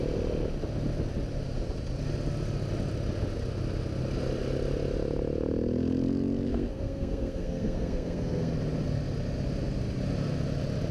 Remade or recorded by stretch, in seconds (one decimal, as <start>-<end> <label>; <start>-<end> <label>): 0.0-6.5 recorded; 6.5-8.5 remade; 8.5-10.9 recorded

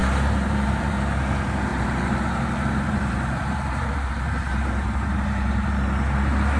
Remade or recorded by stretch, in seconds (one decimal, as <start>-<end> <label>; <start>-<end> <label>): 0.0-1.2 remade; 1.2-1.7 recorded; 1.7-5.7 remade; 5.7-6.6 recorded

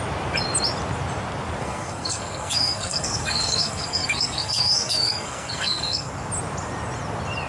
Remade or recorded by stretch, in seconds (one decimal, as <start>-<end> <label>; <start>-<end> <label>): 0.0-1.6 recorded; 1.6-6.1 remade; 6.1-7.5 recorded

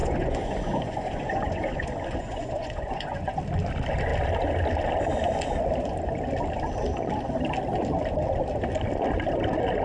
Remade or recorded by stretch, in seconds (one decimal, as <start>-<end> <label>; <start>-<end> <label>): 0.0-3.4 remade; 3.4-9.8 recorded

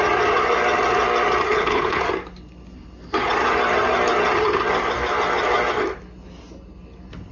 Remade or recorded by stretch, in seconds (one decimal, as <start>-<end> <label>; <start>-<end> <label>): 0.0-1.5 recorded; 1.5-2.0 remade; 2.0-7.3 recorded

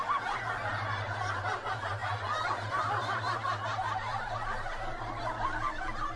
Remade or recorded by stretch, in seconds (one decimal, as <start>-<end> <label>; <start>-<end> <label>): 0.0-6.2 remade